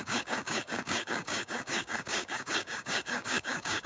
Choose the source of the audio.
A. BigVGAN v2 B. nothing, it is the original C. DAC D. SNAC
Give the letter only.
C